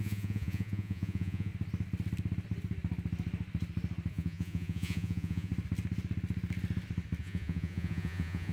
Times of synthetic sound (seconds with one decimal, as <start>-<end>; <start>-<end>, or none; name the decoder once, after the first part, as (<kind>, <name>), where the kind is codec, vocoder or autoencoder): 0.0-1.5 (vocoder, Vocos); 4.1-5.5; 7.2-8.5